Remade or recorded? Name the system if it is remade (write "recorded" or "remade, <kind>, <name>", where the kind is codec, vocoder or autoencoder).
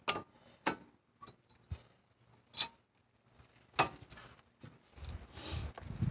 recorded